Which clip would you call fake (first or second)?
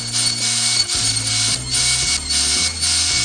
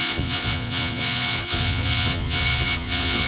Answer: second